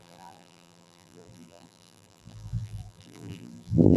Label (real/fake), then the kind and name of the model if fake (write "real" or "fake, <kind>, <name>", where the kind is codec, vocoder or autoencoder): fake, vocoder, BigVGAN v2